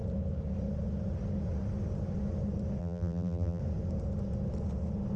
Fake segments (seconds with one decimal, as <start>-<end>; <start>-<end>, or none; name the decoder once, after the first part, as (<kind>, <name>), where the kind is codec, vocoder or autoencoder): 2.8-3.6 (vocoder, BigVGAN v2)